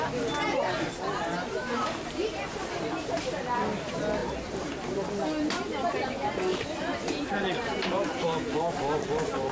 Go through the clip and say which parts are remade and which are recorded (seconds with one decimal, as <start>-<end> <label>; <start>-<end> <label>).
0.0-4.2 recorded; 4.2-4.7 remade; 4.7-6.5 recorded; 6.5-8.8 remade; 8.8-9.5 recorded